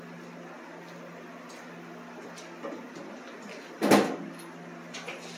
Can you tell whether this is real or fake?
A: real